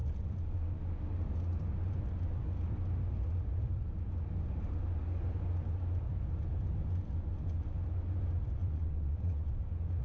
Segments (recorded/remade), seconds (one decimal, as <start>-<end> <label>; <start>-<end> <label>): 0.0-8.6 recorded; 8.6-9.5 remade; 9.5-10.0 recorded